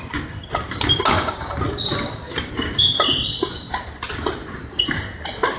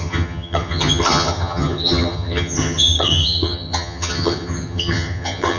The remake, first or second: second